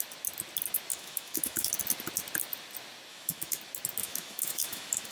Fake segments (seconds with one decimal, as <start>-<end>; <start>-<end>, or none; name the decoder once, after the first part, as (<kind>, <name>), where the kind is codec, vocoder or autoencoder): 0.9-1.7 (autoencoder, DAC-VAE); 3.1-3.6; 4.0-5.1